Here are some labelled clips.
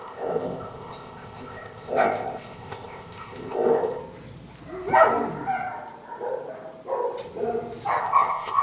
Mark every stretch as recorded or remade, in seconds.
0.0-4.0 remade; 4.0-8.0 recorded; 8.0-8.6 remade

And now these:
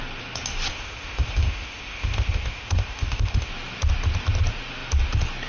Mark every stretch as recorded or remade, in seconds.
0.0-0.7 recorded; 0.7-3.5 remade; 3.5-5.5 recorded

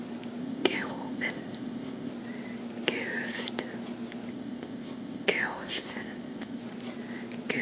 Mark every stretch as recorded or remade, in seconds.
0.0-0.4 recorded; 0.4-2.1 remade; 2.1-4.3 recorded; 4.3-6.6 remade; 6.6-7.6 recorded